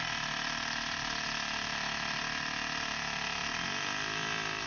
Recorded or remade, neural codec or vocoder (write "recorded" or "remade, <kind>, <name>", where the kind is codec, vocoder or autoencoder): recorded